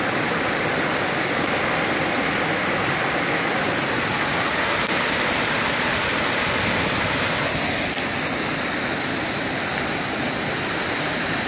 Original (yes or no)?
yes